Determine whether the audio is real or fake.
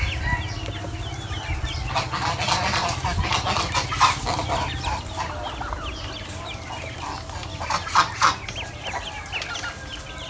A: real